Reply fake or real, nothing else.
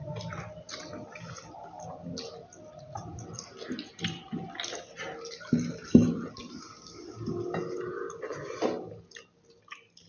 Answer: real